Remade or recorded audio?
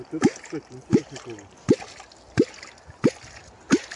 recorded